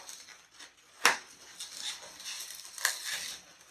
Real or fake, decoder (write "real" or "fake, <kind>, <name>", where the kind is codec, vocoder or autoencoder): real